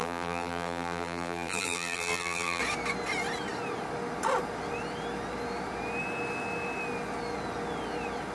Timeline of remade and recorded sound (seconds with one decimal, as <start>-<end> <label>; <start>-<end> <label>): 0.0-2.6 remade; 2.6-8.3 recorded

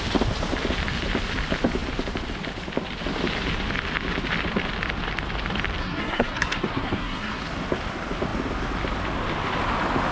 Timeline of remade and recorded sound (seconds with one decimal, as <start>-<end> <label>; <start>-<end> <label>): 0.0-5.8 recorded; 5.8-7.4 remade; 7.4-10.1 recorded

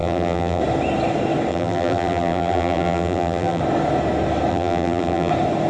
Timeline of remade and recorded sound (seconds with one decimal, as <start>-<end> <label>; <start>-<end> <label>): 0.0-0.6 remade; 0.6-1.5 recorded; 1.5-3.6 remade; 3.6-4.5 recorded; 4.5-5.3 remade; 5.3-5.7 recorded

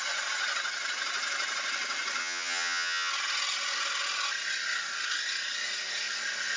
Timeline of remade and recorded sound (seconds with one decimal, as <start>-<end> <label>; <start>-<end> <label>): 0.0-2.2 recorded; 2.2-3.1 remade; 3.1-6.6 recorded

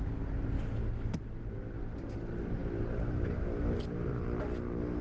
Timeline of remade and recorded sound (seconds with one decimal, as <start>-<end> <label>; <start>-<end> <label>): 0.0-5.0 recorded

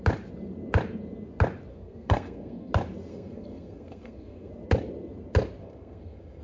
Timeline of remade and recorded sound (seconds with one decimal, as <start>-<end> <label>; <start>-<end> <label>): 0.0-1.7 recorded; 1.7-2.7 remade; 2.7-3.1 recorded; 3.1-4.5 remade; 4.5-5.6 recorded; 5.6-6.4 remade